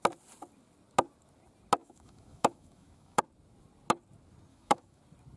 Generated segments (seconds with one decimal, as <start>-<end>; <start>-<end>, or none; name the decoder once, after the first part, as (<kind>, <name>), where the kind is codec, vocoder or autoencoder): 1.8-3.2 (autoencoder, DAC-VAE); 4.5-5.0